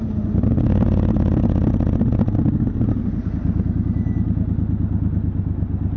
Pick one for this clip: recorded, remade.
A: recorded